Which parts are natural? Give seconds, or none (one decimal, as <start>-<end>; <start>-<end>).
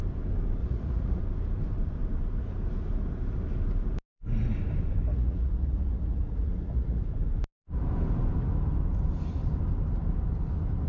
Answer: 0.0-0.6; 1.2-5.1; 7.1-10.9